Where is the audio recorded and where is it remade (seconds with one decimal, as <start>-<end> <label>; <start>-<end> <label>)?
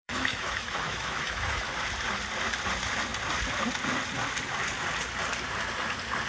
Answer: 0.0-1.6 remade; 1.6-6.3 recorded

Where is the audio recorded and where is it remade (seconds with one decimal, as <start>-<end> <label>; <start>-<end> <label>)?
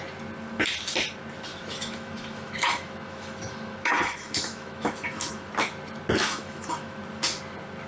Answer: 0.0-1.5 recorded; 1.5-5.5 remade; 5.5-6.2 recorded; 6.2-7.0 remade; 7.0-7.9 recorded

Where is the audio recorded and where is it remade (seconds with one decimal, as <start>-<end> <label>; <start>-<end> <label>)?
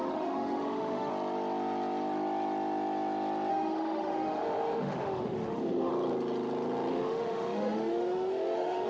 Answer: 0.0-1.1 remade; 1.1-3.5 recorded; 3.5-5.9 remade; 5.9-6.9 recorded; 6.9-8.9 remade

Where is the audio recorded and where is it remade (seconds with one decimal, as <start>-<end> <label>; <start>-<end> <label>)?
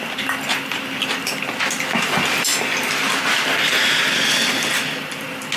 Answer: 0.0-5.6 recorded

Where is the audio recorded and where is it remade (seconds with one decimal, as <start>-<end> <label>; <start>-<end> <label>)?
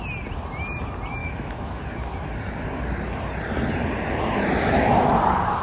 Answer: 0.0-1.2 recorded; 1.2-1.9 remade; 1.9-5.6 recorded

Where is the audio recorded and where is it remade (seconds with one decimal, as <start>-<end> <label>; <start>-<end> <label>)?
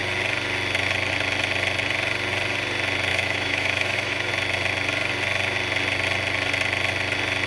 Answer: 0.0-3.1 recorded; 3.1-4.3 remade; 4.3-7.5 recorded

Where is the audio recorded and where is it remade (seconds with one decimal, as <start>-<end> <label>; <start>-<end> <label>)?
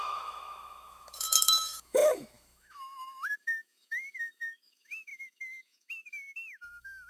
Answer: 0.0-7.1 remade